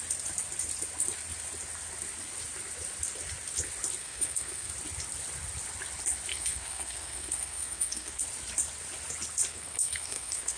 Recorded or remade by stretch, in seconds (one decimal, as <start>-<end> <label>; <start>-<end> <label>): 0.0-4.0 recorded; 4.0-4.7 remade; 4.7-6.3 recorded; 6.3-8.2 remade; 8.2-9.5 recorded; 9.5-10.6 remade